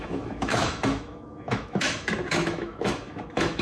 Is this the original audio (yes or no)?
no